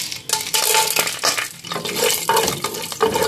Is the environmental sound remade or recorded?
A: recorded